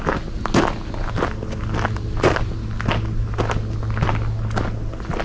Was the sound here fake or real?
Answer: real